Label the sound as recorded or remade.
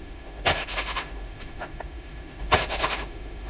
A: remade